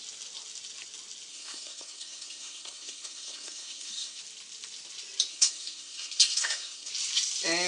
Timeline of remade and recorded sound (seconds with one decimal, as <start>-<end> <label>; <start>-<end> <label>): 0.0-1.3 recorded; 1.3-4.2 remade; 4.2-5.3 recorded; 5.3-6.9 remade; 6.9-7.7 recorded

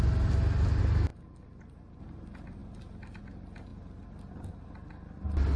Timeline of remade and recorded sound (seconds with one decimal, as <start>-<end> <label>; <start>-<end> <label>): 0.0-5.6 recorded

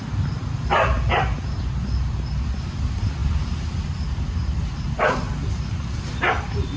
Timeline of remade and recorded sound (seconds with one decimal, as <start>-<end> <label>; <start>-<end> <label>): 0.0-6.8 recorded

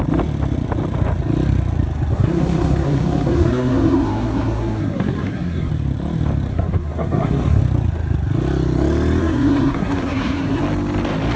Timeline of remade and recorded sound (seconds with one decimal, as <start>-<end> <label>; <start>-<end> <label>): 0.0-2.1 recorded; 2.1-5.7 remade; 5.7-6.5 recorded; 6.5-7.6 remade; 7.6-9.2 recorded; 9.2-10.6 remade; 10.6-11.4 recorded

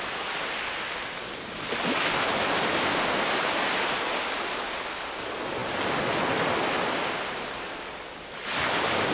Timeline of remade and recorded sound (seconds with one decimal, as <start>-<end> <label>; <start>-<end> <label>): 0.0-9.1 recorded

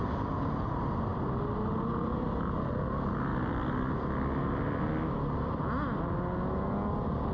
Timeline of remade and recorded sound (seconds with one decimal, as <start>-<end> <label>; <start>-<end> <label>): 0.0-7.3 recorded

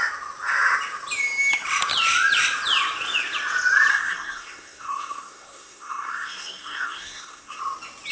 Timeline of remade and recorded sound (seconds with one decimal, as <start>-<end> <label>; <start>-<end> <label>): 0.0-3.9 recorded; 3.9-7.6 remade; 7.6-8.1 recorded